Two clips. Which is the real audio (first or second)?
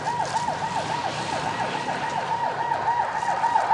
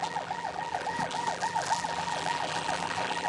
first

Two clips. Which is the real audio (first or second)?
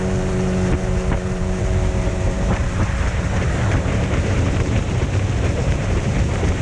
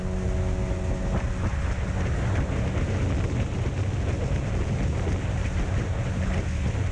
second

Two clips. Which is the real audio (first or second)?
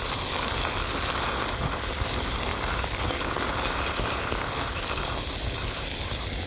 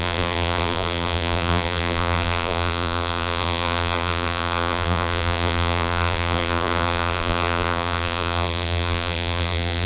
first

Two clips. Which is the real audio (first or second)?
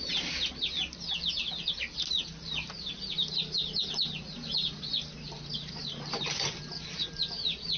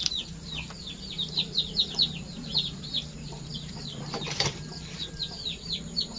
first